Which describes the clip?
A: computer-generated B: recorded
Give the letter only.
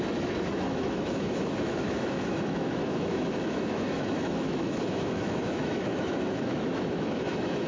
A